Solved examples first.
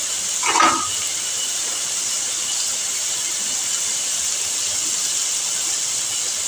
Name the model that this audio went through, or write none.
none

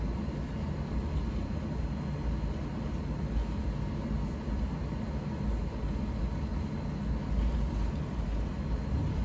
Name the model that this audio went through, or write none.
none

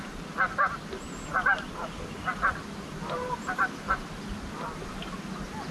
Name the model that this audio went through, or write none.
none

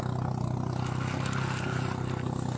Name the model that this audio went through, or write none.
none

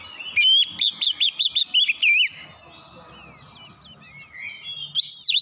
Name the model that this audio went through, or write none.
none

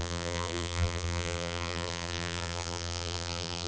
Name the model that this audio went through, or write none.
vocoder, BigVGAN v2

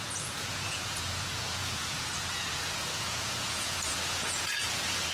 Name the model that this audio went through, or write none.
vocoder, Vocos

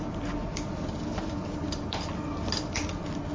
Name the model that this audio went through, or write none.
none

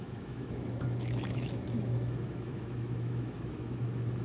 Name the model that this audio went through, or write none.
autoencoder, DAC-VAE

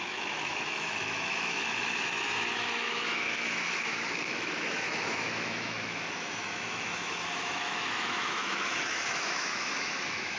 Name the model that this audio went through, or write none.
autoencoder, DAC-VAE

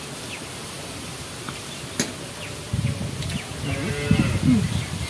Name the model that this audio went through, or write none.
none